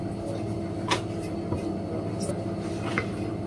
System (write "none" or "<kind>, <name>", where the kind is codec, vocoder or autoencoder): none